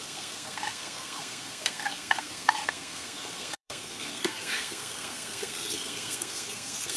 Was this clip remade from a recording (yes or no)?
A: yes